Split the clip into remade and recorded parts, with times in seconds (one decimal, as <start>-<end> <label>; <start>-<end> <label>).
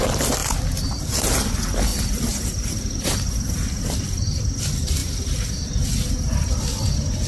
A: 0.0-0.4 recorded; 0.4-1.0 remade; 1.0-1.9 recorded; 1.9-4.6 remade; 4.6-5.0 recorded; 5.0-5.7 remade; 5.7-7.3 recorded